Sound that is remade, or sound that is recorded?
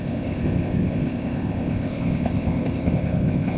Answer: remade